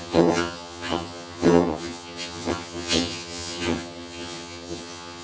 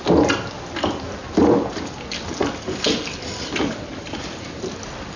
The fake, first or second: first